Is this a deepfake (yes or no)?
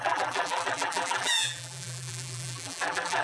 yes